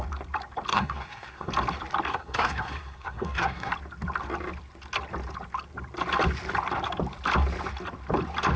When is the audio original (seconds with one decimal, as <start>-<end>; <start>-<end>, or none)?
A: 0.0-0.7; 1.5-2.1; 3.7-8.6